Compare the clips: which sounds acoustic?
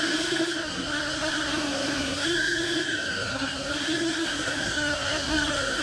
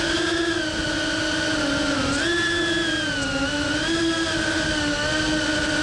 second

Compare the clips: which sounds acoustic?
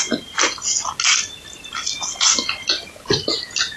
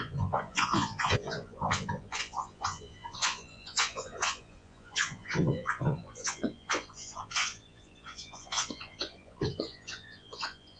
first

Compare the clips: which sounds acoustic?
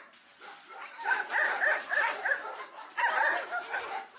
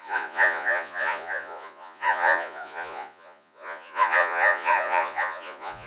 first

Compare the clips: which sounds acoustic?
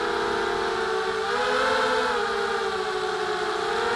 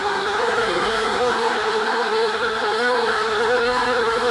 first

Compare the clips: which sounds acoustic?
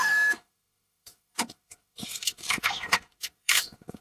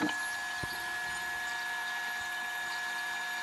second